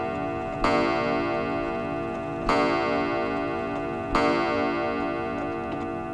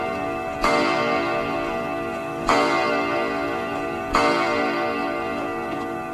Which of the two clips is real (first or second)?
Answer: first